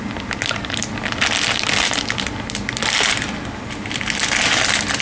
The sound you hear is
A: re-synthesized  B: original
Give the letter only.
B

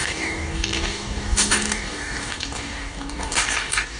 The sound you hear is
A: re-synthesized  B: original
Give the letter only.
A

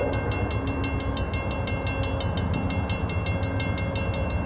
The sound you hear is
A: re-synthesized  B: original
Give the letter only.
B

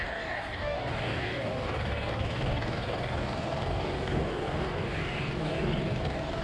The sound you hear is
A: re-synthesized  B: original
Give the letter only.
A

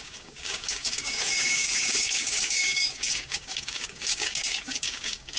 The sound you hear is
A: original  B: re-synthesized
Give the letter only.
B